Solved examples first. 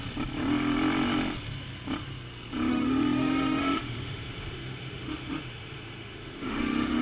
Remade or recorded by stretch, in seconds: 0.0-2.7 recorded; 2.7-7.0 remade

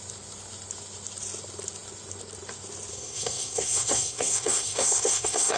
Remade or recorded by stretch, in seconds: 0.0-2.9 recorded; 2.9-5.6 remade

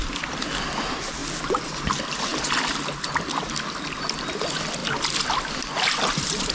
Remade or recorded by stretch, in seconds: 0.0-6.5 recorded

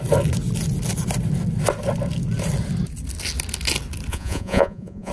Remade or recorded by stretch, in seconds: 0.0-4.1 recorded; 4.1-5.1 remade